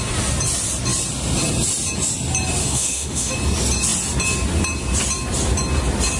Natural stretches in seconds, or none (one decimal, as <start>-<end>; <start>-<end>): 0.0-2.6; 3.3-6.2